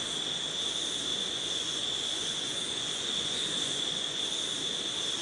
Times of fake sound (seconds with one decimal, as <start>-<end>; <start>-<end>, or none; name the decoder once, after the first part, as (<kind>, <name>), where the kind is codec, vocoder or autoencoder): 1.1-4.2 (vocoder, Vocos)